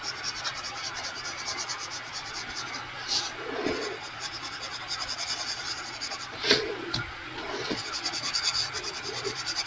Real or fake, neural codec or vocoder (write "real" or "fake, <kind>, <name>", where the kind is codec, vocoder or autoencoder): fake, vocoder, Vocos